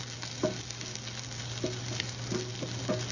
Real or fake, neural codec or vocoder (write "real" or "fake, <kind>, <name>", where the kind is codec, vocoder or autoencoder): real